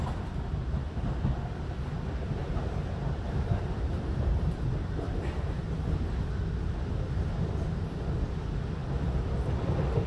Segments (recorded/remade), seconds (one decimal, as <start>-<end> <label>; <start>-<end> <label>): 0.0-2.4 recorded; 2.4-5.6 remade; 5.6-10.1 recorded